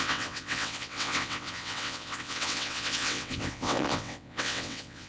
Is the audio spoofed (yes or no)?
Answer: yes